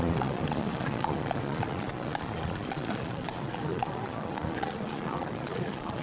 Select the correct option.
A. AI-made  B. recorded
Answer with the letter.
A